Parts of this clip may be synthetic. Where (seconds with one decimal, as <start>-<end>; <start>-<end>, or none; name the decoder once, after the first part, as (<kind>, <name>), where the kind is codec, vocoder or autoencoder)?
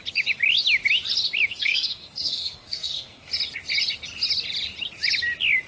1.5-3.3 (codec, SNAC)